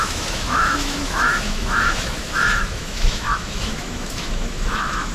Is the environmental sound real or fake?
fake